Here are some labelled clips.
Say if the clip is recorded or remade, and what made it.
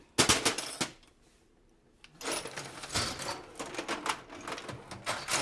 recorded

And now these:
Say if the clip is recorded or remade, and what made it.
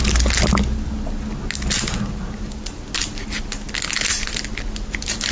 recorded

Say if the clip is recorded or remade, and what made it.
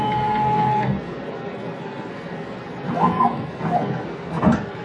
remade, codec, SNAC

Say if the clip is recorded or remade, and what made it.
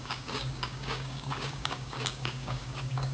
remade, codec, DAC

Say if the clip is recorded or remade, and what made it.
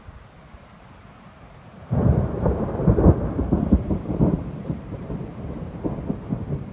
remade, vocoder, BigVGAN v2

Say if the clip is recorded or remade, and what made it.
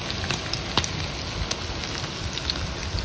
recorded